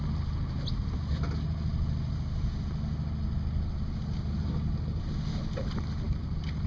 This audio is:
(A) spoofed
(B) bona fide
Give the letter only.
B